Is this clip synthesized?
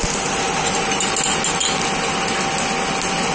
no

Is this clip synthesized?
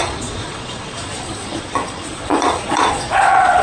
yes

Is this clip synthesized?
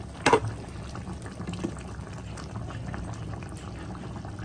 no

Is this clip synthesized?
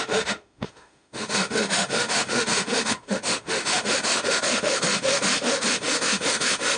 yes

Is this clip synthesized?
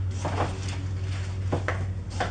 no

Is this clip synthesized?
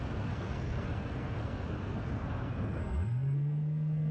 yes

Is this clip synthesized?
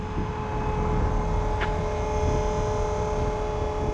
no